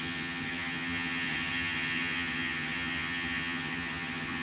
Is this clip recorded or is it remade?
remade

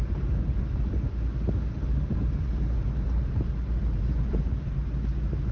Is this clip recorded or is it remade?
recorded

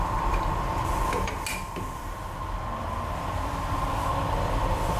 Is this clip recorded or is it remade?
remade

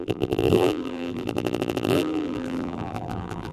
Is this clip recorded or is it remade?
remade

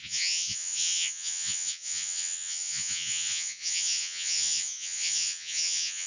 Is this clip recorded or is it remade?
remade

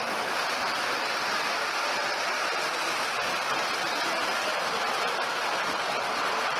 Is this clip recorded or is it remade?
recorded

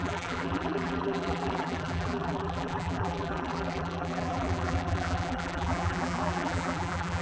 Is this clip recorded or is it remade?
remade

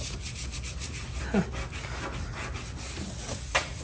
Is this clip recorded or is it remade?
recorded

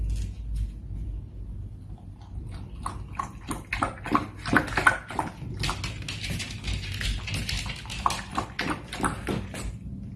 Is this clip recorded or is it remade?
recorded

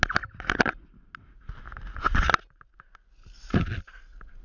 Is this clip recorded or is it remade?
recorded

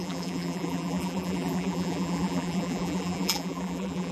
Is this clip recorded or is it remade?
remade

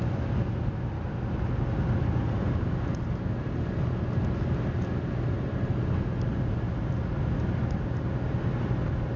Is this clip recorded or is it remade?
recorded